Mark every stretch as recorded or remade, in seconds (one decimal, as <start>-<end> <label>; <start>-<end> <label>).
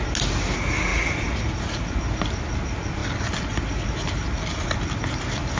0.0-0.9 recorded; 0.9-1.9 remade; 1.9-5.6 recorded